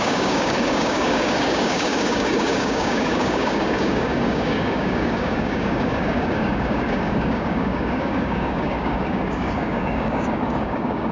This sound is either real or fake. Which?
fake